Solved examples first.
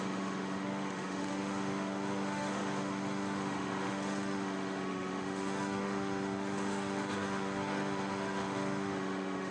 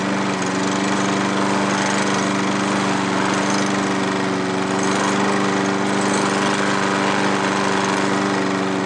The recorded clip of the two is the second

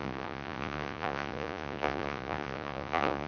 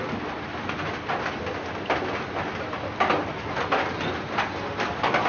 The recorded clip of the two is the second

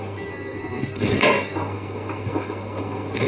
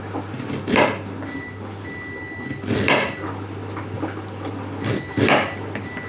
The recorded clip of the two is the second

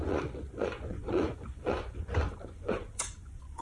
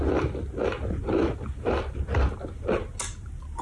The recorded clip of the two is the second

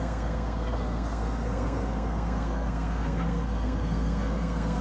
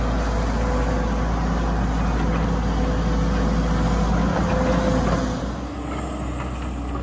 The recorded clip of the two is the second